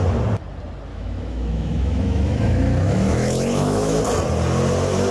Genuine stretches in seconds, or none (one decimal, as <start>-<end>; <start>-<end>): 0.0-0.9; 4.0-5.1